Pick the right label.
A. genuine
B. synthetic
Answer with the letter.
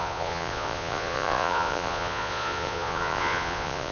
B